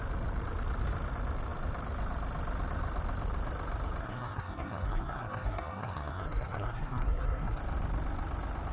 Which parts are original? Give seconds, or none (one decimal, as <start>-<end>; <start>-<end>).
0.0-4.0; 7.6-8.7